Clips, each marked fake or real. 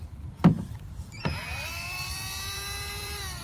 fake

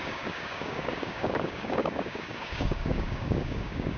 fake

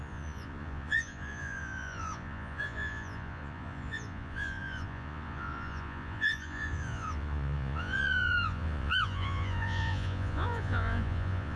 fake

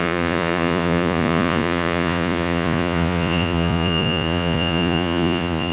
fake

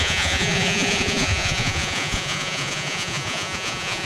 fake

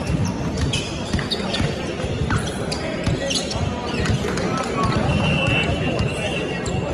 real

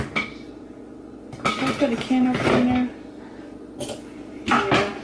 real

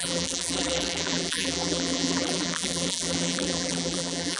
fake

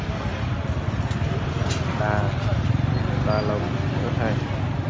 real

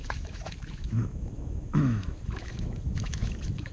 fake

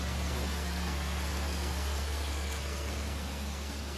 fake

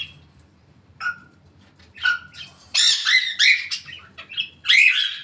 fake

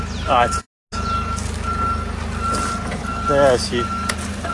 real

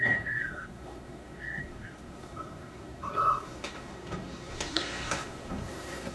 fake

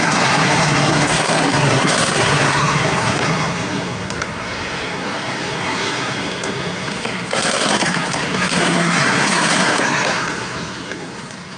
fake